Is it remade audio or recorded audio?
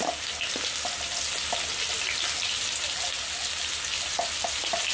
recorded